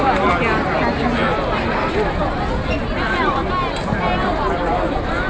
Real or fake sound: real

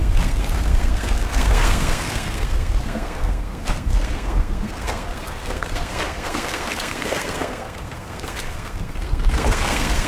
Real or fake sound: fake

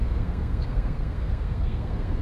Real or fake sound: fake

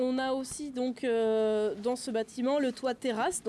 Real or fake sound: real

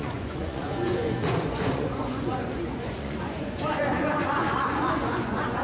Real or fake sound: fake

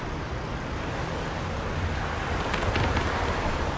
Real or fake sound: real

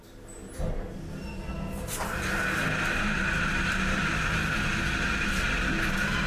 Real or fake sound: real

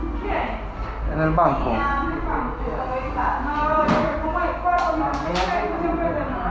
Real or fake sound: real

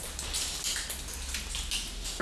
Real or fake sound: real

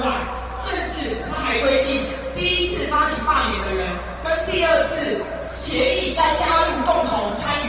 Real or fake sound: real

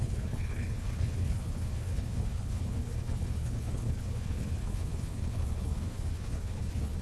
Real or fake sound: fake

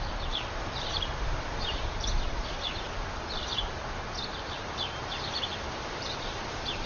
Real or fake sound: fake